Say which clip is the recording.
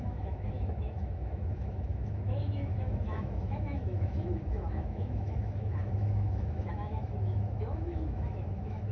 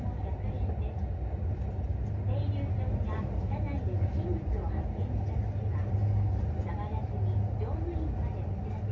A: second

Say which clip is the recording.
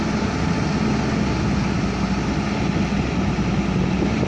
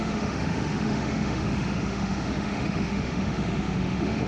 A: first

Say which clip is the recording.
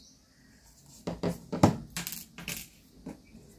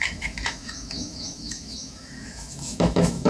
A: first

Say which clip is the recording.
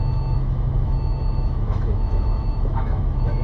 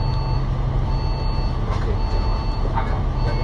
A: second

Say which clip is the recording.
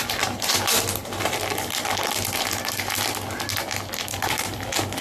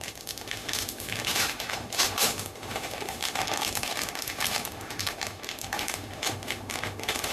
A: first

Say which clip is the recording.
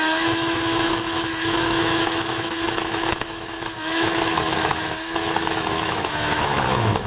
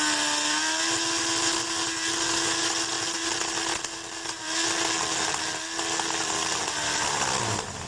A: second